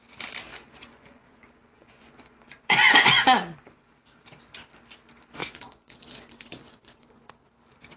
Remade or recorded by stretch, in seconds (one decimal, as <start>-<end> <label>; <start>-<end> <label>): 0.0-0.5 recorded; 0.5-3.9 remade; 3.9-5.4 recorded; 5.4-7.4 remade; 7.4-8.0 recorded